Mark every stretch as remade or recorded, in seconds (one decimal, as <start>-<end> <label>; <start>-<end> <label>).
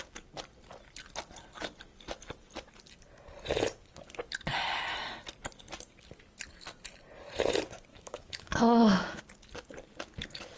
0.0-7.9 recorded; 7.9-9.2 remade; 9.2-10.6 recorded